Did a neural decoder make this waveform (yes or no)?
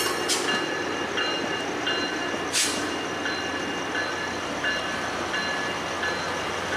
no